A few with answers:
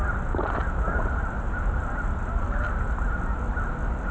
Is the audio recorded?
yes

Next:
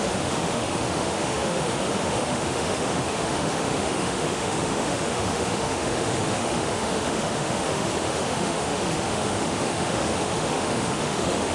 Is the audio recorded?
no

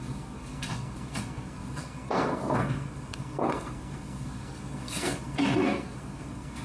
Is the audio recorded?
no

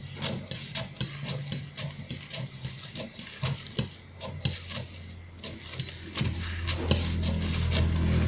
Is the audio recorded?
yes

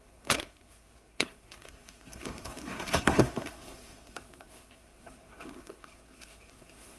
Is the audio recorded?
no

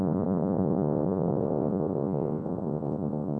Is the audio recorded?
no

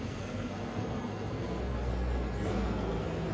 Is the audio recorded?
no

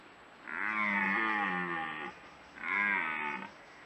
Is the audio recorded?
yes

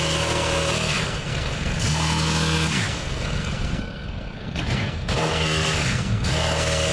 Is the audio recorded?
no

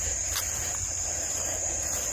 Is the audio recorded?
yes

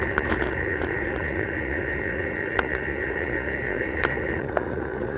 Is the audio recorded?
no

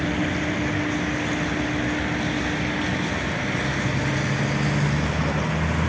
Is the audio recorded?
yes